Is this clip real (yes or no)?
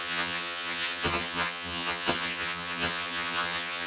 no